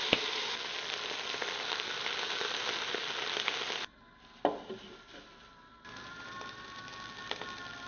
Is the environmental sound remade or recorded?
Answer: recorded